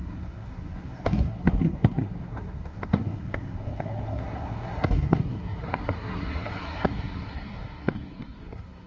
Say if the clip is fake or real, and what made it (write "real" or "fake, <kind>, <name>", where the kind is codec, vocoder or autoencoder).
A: fake, codec, SNAC